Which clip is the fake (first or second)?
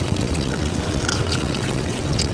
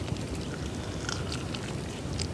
first